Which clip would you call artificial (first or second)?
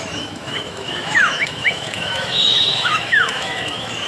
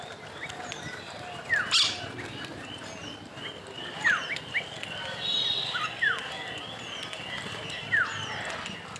first